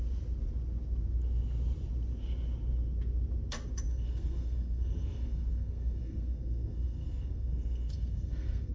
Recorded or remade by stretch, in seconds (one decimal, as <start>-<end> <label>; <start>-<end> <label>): 0.0-3.9 recorded; 3.9-8.7 remade